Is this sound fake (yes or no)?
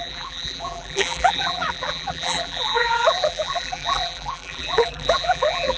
yes